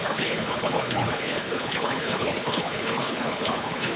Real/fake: fake